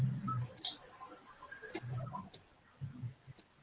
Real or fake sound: real